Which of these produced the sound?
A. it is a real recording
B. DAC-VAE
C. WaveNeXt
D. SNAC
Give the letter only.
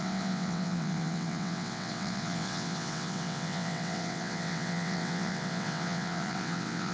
C